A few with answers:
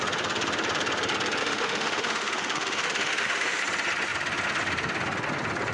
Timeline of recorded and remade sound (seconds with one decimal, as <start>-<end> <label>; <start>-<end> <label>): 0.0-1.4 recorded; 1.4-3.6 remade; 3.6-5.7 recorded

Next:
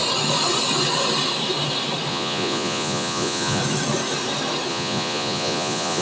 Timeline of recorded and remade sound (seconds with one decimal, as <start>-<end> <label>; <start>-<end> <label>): 0.0-2.1 recorded; 2.1-3.6 remade; 3.6-4.7 recorded; 4.7-6.0 remade

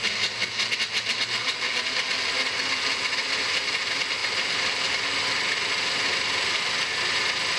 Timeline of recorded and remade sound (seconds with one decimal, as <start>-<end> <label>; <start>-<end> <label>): 0.0-0.4 recorded; 0.4-2.2 remade; 2.2-7.6 recorded

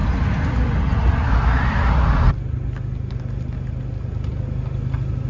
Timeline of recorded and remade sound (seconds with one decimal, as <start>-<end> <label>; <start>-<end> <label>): 0.0-5.3 recorded

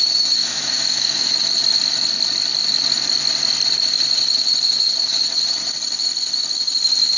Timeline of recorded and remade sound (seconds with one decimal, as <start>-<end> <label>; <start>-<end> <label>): 0.0-0.4 recorded; 0.4-1.3 remade; 1.3-7.2 recorded